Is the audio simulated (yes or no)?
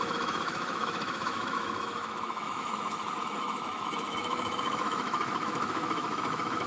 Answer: yes